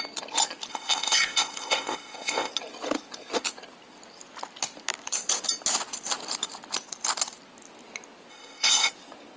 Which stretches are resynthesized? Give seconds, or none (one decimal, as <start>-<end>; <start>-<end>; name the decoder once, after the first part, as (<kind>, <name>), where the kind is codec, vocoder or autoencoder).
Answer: 0.7-2.5 (codec, ZipCodec); 8.3-8.9